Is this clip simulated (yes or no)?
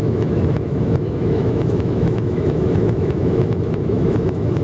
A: yes